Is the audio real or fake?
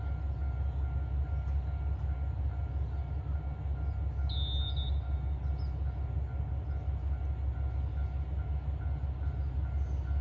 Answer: real